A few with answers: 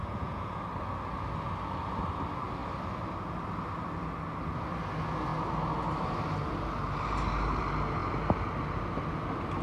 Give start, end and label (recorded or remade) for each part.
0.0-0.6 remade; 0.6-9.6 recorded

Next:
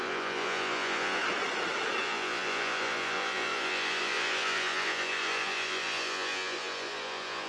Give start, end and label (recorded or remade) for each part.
0.0-1.2 remade; 1.2-2.0 recorded; 2.0-7.5 remade

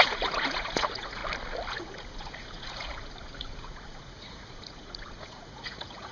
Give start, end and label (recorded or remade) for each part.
0.0-1.2 remade; 1.2-1.7 recorded; 1.7-6.1 remade

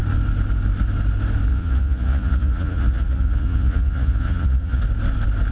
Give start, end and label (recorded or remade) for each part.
0.0-1.5 recorded; 1.5-4.8 remade; 4.8-5.5 recorded